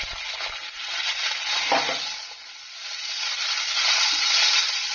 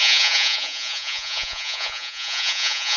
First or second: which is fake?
second